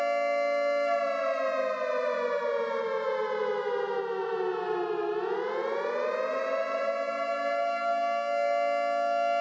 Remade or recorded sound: recorded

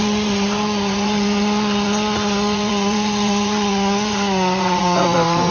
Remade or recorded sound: remade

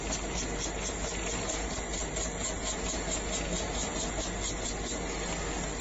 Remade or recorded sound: recorded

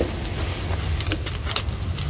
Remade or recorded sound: recorded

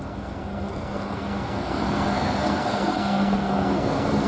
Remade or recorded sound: remade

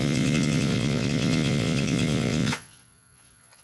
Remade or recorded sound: remade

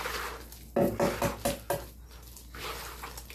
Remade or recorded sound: recorded